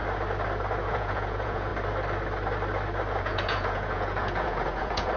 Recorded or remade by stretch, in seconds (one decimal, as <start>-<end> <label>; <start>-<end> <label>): 0.0-0.9 recorded; 0.9-1.7 remade; 1.7-3.2 recorded; 3.2-5.2 remade